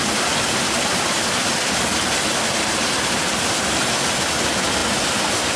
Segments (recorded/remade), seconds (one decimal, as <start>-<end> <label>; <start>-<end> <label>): 0.0-5.6 recorded

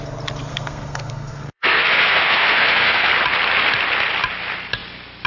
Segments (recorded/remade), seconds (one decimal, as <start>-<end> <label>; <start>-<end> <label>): 0.0-0.5 recorded; 0.5-3.1 remade; 3.1-5.3 recorded

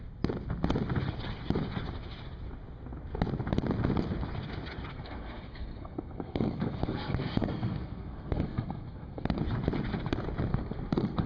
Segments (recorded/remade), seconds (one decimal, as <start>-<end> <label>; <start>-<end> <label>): 0.0-4.9 recorded; 4.9-9.4 remade; 9.4-10.5 recorded; 10.5-11.3 remade

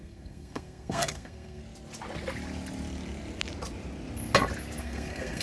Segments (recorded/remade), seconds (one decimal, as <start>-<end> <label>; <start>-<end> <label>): 0.0-1.6 remade; 1.6-4.8 recorded; 4.8-5.4 remade

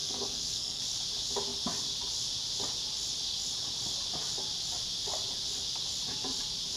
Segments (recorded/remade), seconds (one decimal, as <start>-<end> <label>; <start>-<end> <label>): 0.0-0.8 remade; 0.8-6.8 recorded

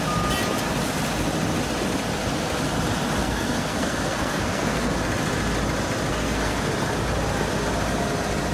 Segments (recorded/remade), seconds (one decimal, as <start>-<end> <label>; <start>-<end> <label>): 0.0-3.2 recorded; 3.2-4.9 remade; 4.9-6.1 recorded; 6.1-6.7 remade; 6.7-8.5 recorded